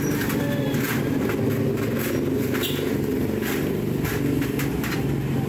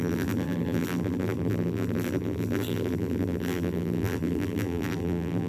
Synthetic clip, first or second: second